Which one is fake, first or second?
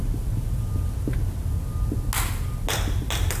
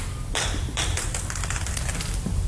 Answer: second